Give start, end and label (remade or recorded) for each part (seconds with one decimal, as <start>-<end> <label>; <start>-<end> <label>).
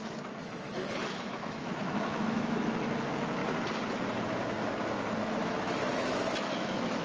0.0-3.4 remade; 3.4-5.2 recorded; 5.2-7.0 remade